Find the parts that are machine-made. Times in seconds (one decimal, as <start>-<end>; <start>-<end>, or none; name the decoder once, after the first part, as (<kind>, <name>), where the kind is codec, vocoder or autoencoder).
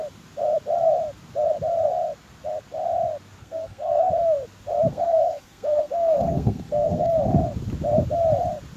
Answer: 3.4-4.1 (codec, SNAC); 4.9-7.1